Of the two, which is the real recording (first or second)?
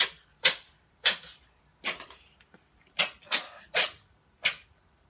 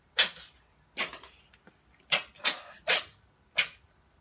second